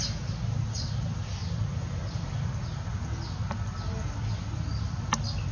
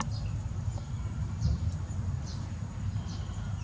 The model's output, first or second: second